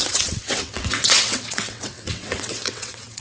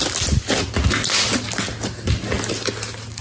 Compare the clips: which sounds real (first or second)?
second